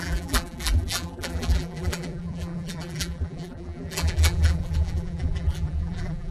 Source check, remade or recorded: remade